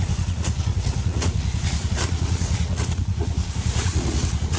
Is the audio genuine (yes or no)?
no